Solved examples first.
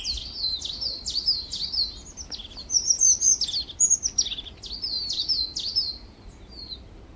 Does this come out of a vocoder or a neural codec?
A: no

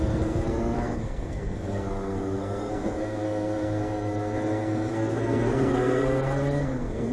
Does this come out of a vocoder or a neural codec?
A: yes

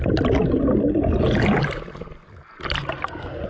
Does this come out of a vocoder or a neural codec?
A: no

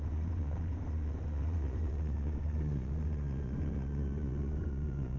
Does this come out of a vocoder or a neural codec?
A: yes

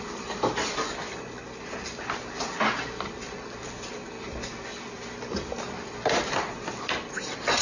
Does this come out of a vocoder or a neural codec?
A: no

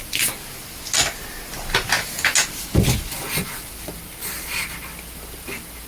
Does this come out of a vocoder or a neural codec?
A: no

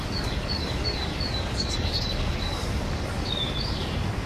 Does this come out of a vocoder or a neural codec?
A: yes